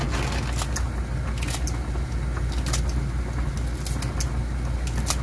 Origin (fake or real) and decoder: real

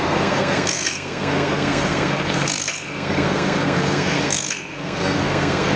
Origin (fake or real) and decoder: fake, codec, SNAC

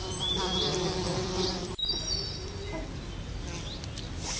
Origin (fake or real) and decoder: real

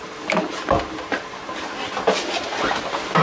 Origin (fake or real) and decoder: real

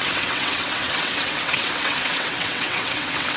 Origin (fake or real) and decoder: fake, vocoder, WaveNeXt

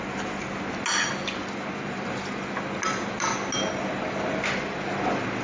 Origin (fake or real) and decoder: real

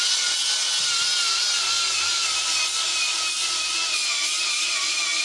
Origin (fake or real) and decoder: real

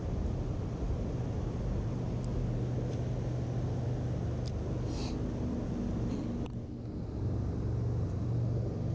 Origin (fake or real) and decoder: real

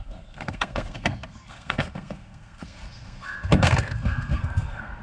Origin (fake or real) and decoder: fake, codec, SNAC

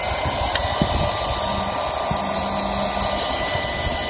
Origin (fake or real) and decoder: real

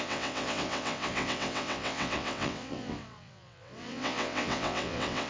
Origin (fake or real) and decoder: fake, vocoder, WaveNeXt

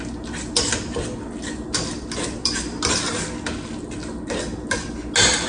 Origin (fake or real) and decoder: real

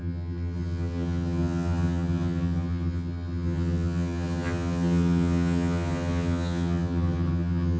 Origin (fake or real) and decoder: fake, vocoder, HiFi-GAN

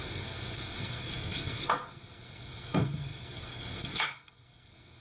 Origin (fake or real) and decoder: fake, codec, SNAC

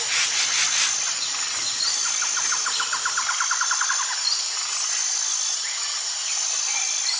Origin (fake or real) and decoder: real